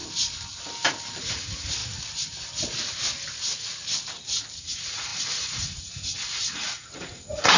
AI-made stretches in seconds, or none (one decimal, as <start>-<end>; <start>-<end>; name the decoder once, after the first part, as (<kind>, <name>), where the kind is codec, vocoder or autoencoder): 1.2-1.8 (vocoder, Vocos); 4.6-7.6